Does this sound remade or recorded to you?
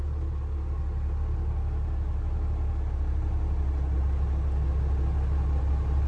recorded